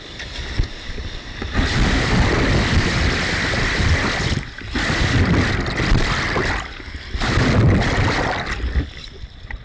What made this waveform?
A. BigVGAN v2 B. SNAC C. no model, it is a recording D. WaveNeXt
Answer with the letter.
C